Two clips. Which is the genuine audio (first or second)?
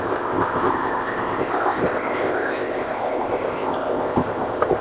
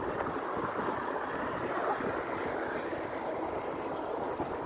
second